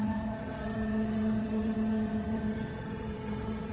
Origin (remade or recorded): remade